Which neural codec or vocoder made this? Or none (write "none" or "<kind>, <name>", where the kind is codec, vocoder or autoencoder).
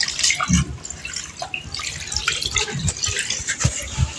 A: none